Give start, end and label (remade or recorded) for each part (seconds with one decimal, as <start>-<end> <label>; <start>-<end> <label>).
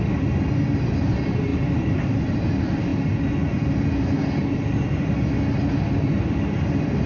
0.0-1.5 recorded; 1.5-2.2 remade; 2.2-7.1 recorded